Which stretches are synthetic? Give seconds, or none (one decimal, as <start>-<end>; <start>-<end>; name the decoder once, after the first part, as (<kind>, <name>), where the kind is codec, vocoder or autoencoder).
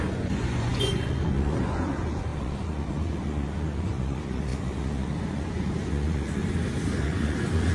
0.0-6.4 (vocoder, Vocos); 7.0-7.7